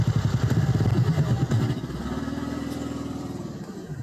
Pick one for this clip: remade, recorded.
remade